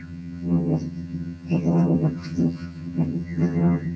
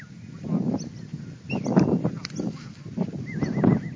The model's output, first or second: first